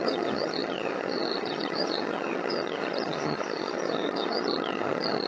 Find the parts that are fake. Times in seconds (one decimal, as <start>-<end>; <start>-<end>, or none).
0.0-5.3